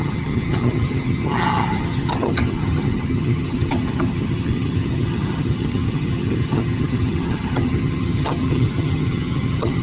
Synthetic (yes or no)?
yes